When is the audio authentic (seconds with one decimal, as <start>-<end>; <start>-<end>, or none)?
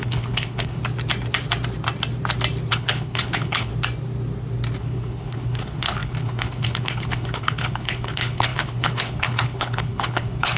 0.8-2.7; 3.7-4.8